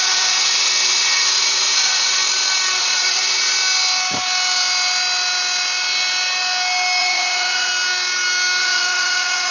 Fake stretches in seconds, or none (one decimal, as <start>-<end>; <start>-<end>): 0.0-2.2; 2.8-3.5; 7.0-7.7; 8.6-9.5